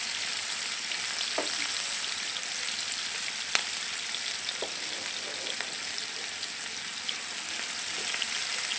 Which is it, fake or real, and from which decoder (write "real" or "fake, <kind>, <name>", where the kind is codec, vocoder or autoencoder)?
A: real